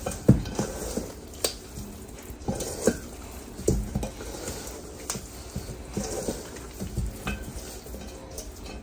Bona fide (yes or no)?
yes